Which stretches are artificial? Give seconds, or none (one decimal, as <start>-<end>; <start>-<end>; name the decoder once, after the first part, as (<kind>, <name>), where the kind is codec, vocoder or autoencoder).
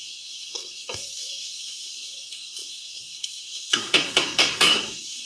0.0-5.3 (codec, SNAC)